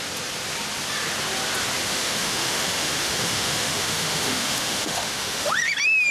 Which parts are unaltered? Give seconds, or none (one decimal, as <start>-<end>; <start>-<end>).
0.0-1.8; 5.5-6.1